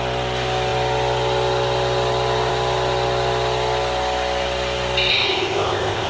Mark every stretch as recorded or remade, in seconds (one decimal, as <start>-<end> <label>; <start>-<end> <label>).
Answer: 0.0-5.1 recorded; 5.1-6.1 remade